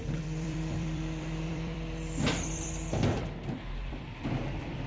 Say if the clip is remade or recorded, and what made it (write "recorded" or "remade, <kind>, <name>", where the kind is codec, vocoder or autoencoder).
remade, vocoder, BigVGAN v2